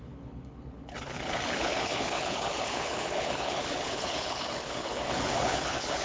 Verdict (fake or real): fake